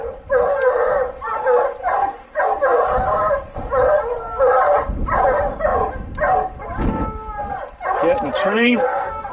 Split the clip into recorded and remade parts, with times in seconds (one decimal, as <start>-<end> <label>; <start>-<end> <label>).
0.0-8.4 recorded; 8.4-9.3 remade